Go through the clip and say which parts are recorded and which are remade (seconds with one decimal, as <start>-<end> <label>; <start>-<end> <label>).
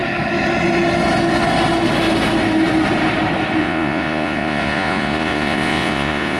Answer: 0.0-3.6 recorded; 3.6-6.4 remade